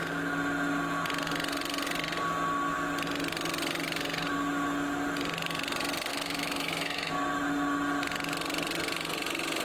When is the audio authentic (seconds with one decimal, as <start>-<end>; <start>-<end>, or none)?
0.0-6.1; 7.1-9.6